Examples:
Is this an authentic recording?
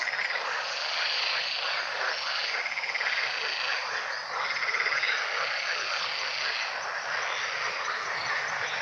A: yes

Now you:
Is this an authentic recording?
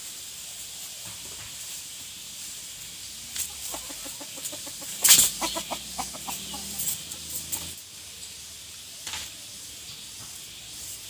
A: yes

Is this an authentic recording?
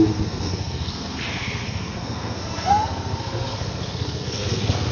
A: no